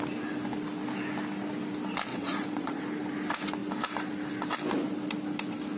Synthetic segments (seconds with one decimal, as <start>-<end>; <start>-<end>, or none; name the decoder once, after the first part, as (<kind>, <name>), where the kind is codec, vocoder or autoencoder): 2.1-2.8 (vocoder, Vocos)

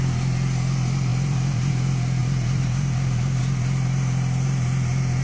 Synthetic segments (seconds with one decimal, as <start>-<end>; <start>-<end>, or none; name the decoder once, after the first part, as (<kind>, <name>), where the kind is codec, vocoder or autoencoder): 1.1-1.7 (vocoder, BigVGAN v2); 2.2-3.4

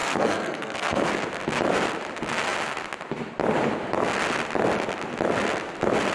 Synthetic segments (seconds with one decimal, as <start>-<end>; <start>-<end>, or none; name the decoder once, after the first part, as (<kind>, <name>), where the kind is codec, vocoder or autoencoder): 0.0-1.1 (codec, SNAC)

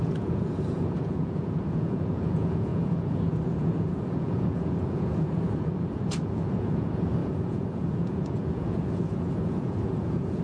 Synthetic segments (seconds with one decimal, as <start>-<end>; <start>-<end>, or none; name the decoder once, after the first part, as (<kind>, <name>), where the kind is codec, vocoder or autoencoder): 0.0-10.4 (vocoder, Vocos)

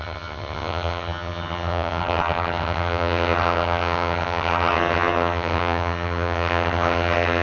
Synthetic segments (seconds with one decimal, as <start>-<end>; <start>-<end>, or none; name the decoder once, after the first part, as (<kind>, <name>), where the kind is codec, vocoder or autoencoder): 0.0-7.4 (vocoder, HiFi-GAN)